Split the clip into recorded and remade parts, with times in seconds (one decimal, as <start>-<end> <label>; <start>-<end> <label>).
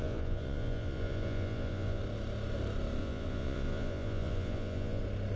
0.0-2.0 remade; 2.0-3.0 recorded; 3.0-5.0 remade; 5.0-5.4 recorded